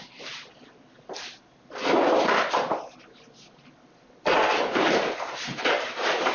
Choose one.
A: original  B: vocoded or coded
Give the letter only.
A